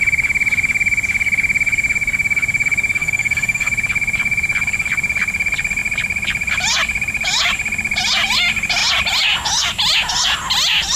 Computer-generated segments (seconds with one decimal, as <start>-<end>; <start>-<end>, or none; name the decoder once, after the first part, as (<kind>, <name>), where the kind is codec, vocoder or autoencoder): 3.0-3.7 (codec, SNAC)